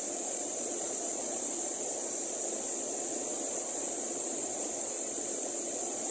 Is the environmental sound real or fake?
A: fake